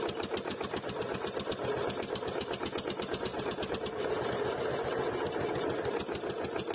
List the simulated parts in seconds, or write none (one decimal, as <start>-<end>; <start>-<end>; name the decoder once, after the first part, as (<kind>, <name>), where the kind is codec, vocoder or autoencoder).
3.3-4.3 (vocoder, BigVGAN v2)